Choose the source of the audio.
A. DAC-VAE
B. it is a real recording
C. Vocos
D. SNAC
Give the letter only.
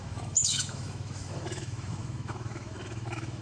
A